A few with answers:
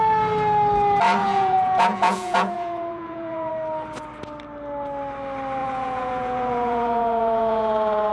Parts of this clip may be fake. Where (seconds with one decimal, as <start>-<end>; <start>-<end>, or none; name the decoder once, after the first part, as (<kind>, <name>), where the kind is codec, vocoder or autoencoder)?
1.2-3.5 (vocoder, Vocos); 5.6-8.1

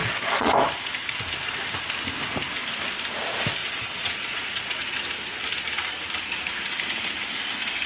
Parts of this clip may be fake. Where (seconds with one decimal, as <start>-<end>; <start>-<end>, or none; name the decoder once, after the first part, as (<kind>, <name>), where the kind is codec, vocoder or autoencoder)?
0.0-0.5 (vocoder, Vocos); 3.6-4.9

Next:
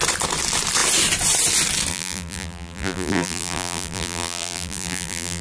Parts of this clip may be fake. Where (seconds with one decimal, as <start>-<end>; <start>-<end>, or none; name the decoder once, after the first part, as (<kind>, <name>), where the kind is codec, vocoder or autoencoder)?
1.9-5.4 (vocoder, BigVGAN v2)

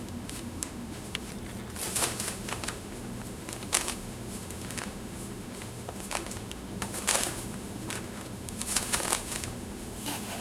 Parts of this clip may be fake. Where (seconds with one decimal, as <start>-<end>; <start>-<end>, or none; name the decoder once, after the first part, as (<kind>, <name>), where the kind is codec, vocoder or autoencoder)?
0.0-1.3 (autoencoder, DAC-VAE); 1.9-10.4

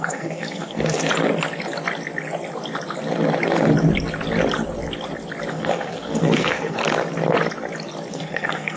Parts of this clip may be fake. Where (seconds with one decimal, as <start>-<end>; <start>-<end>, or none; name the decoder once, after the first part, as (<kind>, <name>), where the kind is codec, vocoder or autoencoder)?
0.0-1.1 (codec, SNAC); 5.5-6.8; 8.1-8.8

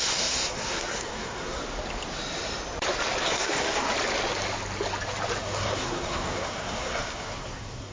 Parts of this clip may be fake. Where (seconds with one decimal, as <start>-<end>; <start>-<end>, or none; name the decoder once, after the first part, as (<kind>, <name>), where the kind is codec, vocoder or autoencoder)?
0.0-1.6 (codec, SNAC); 3.2-3.9; 5.4-7.9

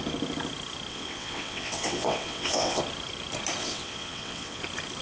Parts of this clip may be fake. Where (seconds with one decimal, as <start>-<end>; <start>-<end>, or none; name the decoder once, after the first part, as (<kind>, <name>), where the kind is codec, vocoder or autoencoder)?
0.9-2.8 (vocoder, WaveNeXt); 3.6-4.6